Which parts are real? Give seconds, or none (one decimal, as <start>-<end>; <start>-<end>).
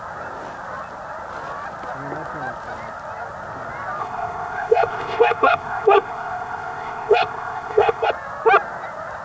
0.0-4.0; 8.1-9.2